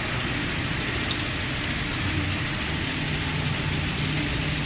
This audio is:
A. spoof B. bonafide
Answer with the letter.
B